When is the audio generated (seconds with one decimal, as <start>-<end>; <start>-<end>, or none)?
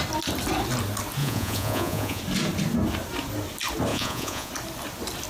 1.2-2.2; 3.9-4.5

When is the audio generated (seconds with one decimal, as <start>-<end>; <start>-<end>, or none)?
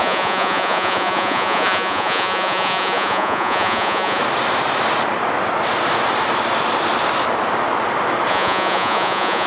0.0-4.2; 8.3-9.5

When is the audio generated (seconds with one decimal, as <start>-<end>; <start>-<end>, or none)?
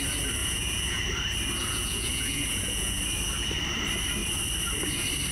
0.4-1.0; 1.6-3.0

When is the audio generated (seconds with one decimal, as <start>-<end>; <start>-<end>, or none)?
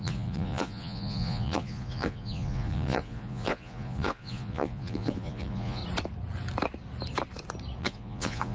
0.0-5.8; 7.8-8.5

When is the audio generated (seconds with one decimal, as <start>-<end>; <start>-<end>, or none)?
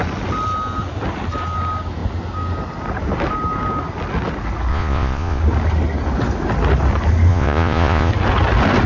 4.7-5.4; 7.3-8.1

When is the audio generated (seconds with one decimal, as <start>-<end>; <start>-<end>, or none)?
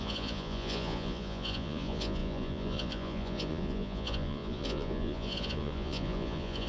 0.0-6.7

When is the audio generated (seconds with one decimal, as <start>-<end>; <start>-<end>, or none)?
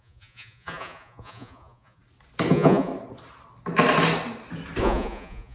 0.0-2.0; 2.5-2.9; 4.8-5.5